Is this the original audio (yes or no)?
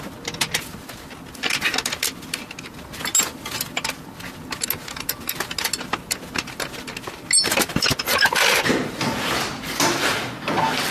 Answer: yes